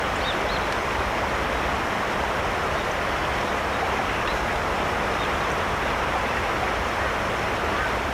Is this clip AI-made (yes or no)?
no